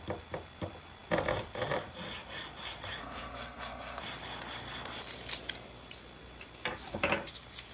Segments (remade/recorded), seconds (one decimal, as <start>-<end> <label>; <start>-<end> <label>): 0.0-3.0 recorded; 3.0-4.0 remade; 4.0-7.7 recorded